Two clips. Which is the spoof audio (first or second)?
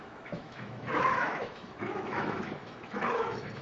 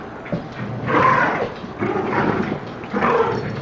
first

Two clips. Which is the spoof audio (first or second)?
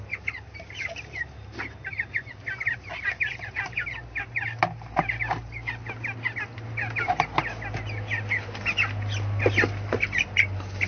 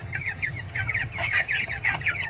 second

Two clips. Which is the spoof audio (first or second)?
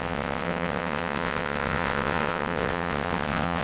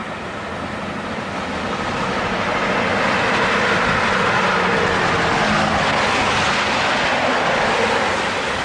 first